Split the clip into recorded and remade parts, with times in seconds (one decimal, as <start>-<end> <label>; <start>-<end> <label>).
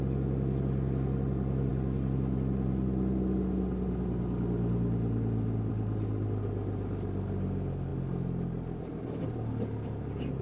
0.0-10.4 recorded